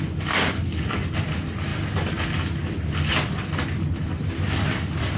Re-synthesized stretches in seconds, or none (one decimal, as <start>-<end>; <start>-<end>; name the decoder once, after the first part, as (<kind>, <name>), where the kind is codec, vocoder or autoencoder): none